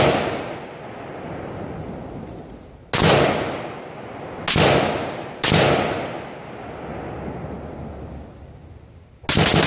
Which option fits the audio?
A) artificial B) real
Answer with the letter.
B